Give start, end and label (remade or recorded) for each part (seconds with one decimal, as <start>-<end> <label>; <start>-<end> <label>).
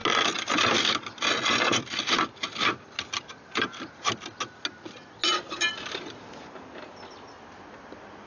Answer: 0.0-8.3 recorded